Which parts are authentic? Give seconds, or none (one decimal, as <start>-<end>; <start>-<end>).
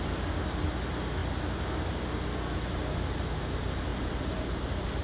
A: 0.0-3.9